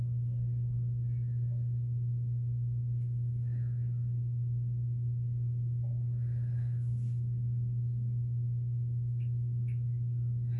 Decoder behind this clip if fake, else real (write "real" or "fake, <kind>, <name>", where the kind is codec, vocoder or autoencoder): real